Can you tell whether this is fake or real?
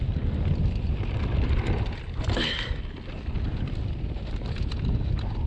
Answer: real